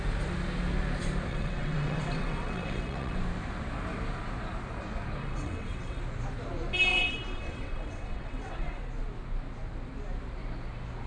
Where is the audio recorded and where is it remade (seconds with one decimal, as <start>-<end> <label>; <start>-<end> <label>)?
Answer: 0.0-1.3 recorded; 1.3-3.2 remade; 3.2-5.2 recorded; 5.2-6.0 remade; 6.0-6.9 recorded; 6.9-8.8 remade; 8.8-11.1 recorded